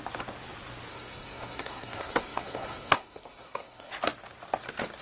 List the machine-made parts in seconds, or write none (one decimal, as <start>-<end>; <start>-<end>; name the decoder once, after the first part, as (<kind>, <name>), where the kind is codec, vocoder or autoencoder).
0.9-3.9 (codec, SNAC)